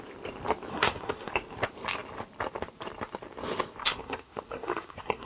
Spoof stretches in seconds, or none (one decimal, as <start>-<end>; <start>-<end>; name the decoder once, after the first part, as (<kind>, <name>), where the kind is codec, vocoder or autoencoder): 0.7-1.3 (codec, SNAC); 3.8-5.3